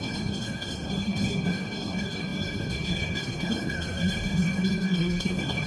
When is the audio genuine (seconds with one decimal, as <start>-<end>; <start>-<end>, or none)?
none